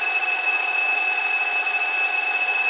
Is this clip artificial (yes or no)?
yes